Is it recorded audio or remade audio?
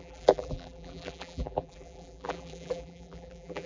remade